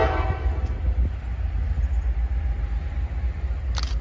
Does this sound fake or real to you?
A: real